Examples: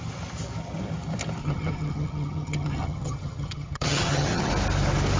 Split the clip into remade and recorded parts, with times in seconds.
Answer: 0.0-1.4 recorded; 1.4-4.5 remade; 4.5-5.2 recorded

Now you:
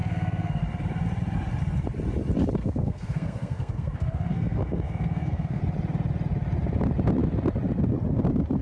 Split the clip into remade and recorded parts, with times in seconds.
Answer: 0.0-0.6 remade; 0.6-2.6 recorded; 2.6-5.6 remade; 5.6-8.6 recorded

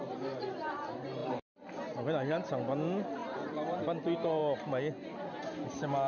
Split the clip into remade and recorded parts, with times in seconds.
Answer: 0.0-1.2 recorded; 1.2-1.7 remade; 1.7-3.2 recorded; 3.2-3.8 remade; 3.8-6.1 recorded

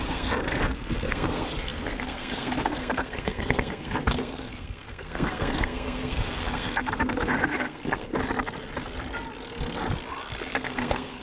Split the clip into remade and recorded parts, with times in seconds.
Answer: 0.0-8.1 remade; 8.1-10.5 recorded; 10.5-11.2 remade

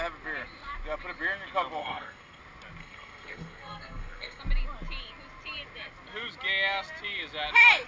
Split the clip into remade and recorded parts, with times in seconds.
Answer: 0.0-1.8 recorded; 1.8-2.4 remade; 2.4-2.8 recorded; 2.8-4.4 remade; 4.4-7.9 recorded

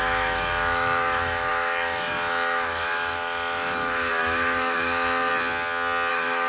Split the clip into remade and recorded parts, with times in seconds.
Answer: 0.0-5.3 remade; 5.3-6.1 recorded; 6.1-6.5 remade

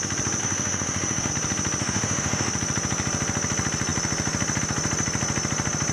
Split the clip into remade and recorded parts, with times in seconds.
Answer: 0.0-0.4 recorded; 0.4-1.3 remade; 1.3-1.8 recorded; 1.8-2.5 remade; 2.5-5.9 recorded